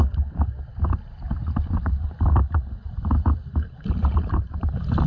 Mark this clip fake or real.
real